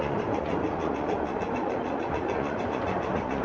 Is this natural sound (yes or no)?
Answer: no